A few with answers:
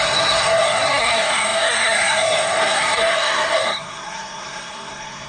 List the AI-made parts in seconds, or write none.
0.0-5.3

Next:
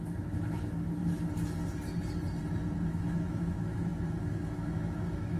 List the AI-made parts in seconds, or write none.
0.0-1.0; 2.9-5.4

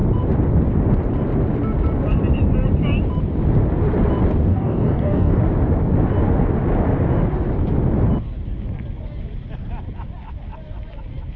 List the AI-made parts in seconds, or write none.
4.5-5.3

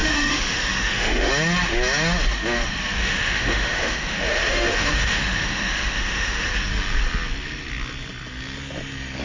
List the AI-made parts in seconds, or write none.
0.0-1.3; 3.0-6.5